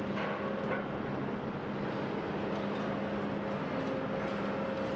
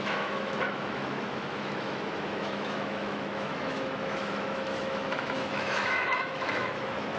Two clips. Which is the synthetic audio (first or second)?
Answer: second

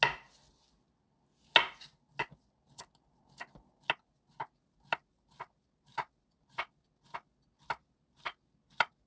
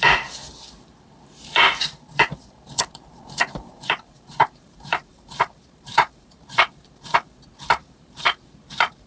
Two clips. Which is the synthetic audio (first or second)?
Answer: second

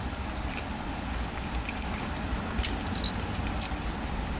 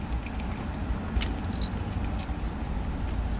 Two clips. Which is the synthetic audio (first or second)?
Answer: first